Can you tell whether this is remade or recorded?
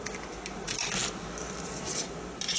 recorded